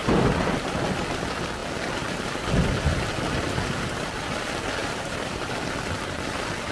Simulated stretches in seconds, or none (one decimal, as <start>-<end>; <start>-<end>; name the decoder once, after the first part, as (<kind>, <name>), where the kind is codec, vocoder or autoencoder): 0.0-0.7 (vocoder, BigVGAN v2); 4.8-5.6

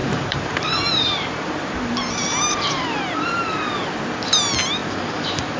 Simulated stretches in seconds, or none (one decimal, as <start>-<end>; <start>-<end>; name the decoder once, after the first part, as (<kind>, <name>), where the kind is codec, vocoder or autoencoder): 0.0-3.4 (vocoder, BigVGAN v2); 4.8-5.6

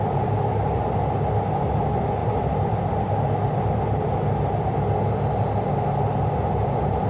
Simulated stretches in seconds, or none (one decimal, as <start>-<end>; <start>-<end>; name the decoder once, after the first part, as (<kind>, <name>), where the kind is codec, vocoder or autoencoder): 2.2-2.9 (vocoder, BigVGAN v2)

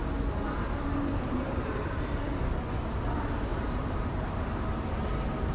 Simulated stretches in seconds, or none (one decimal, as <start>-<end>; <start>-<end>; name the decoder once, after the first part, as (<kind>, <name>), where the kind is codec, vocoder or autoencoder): 1.1-2.2 (vocoder, BigVGAN v2); 3.5-4.6

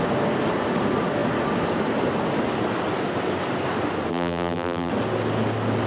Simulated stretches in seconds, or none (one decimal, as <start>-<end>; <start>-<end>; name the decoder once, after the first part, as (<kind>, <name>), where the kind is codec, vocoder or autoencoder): 4.1-4.9 (vocoder, BigVGAN v2)

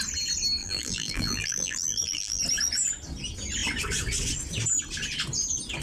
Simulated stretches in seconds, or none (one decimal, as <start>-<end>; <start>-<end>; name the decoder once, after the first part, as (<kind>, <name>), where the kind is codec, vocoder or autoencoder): 0.6-2.4 (vocoder, BigVGAN v2)

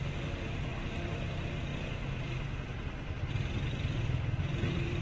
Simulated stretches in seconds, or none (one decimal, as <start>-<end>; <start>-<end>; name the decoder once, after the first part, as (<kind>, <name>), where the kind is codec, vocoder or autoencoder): 0.0-1.7 (vocoder, BigVGAN v2); 4.4-5.0